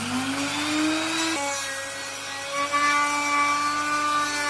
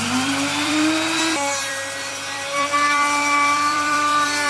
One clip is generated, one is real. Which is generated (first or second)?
second